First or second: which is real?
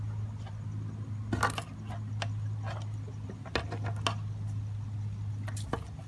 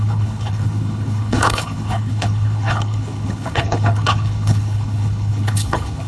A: first